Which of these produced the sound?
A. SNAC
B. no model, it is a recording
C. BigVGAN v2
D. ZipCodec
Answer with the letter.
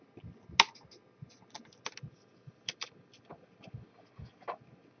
B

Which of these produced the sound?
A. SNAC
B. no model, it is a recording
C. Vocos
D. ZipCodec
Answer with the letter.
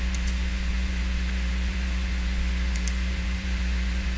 C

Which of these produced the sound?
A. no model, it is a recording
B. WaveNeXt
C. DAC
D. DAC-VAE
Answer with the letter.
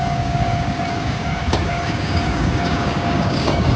C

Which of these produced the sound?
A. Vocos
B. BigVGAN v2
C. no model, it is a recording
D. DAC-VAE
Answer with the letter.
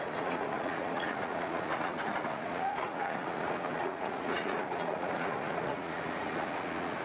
A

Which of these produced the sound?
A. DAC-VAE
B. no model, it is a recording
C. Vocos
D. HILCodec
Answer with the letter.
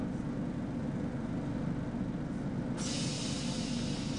B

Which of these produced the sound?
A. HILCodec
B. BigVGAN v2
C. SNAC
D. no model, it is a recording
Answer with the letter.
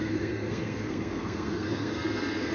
C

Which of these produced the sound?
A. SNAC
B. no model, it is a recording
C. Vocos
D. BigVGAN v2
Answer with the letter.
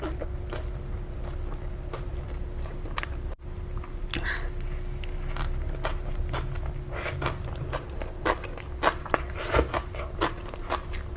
B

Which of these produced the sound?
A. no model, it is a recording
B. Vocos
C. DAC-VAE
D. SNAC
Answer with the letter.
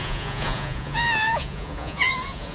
B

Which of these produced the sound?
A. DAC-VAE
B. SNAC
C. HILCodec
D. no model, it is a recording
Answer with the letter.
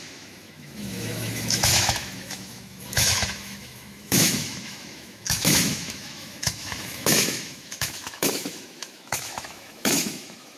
A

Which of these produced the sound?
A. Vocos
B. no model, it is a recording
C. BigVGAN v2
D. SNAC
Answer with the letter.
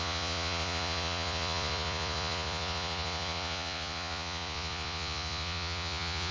A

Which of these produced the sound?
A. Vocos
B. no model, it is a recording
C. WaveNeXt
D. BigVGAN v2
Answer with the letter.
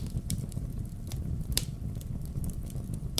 D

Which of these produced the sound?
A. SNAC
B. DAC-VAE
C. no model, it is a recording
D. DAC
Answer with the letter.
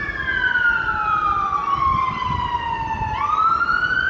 C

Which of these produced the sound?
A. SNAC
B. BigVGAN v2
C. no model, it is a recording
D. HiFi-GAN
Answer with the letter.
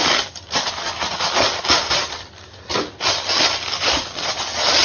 C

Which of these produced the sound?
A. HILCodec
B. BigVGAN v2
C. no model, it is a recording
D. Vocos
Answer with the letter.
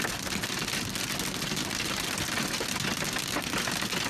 C